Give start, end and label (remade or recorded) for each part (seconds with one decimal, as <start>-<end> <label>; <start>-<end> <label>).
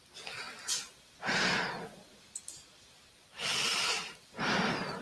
0.0-5.0 recorded